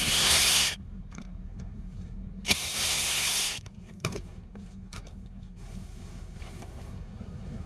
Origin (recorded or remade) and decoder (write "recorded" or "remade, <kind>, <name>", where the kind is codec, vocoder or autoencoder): remade, codec, SNAC